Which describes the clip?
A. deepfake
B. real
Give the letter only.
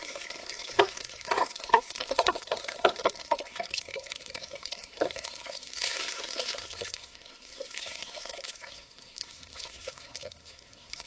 A